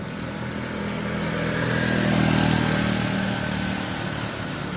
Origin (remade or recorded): recorded